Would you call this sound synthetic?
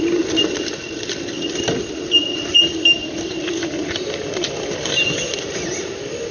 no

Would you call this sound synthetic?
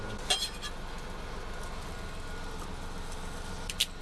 no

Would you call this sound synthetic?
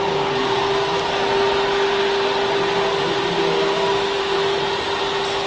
no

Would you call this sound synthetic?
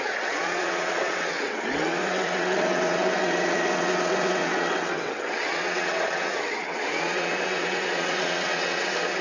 yes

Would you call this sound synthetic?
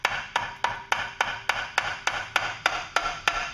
no